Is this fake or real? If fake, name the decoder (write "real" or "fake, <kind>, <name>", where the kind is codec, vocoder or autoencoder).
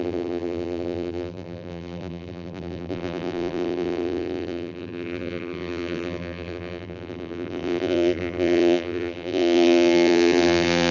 fake, vocoder, BigVGAN v2